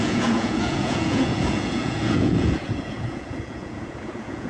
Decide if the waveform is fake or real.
fake